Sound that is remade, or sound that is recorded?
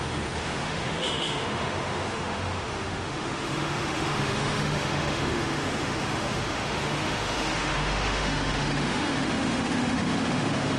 remade